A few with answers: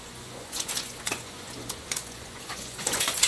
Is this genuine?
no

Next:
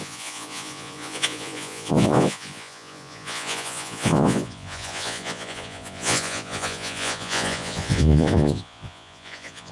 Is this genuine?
no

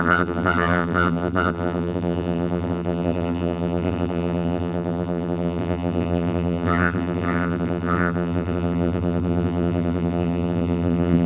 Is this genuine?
no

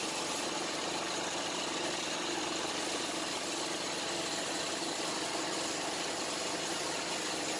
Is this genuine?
yes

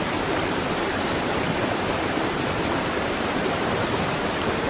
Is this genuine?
no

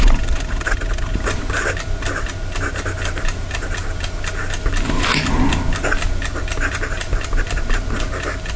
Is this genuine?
yes